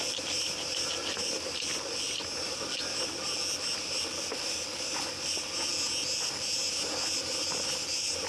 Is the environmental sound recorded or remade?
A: recorded